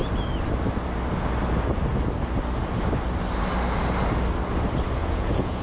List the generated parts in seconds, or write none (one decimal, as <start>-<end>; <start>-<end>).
5.0-5.6

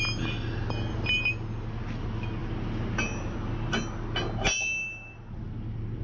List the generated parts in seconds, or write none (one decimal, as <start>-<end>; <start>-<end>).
none

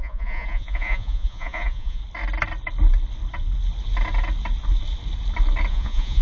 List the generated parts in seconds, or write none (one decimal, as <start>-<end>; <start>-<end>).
0.0-2.0; 5.7-6.2

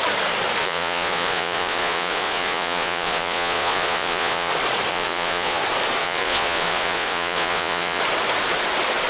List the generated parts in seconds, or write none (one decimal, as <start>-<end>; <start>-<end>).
0.6-4.5; 4.9-5.6; 6.0-8.0

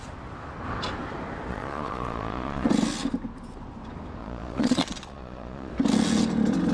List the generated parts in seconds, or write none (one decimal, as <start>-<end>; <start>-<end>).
1.5-2.7; 4.2-5.7

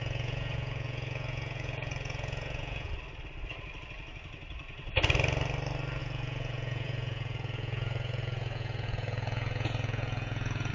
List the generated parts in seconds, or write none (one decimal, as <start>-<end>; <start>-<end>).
0.0-2.9; 6.0-10.7